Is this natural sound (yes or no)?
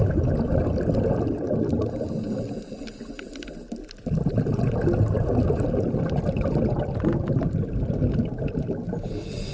yes